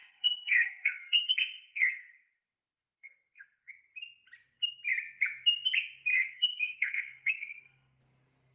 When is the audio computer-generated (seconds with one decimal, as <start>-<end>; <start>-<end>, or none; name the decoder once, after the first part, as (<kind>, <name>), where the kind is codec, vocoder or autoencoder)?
0.0-3.7 (codec, SNAC); 6.1-8.0